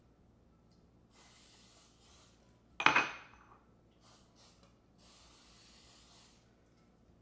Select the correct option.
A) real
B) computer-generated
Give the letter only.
A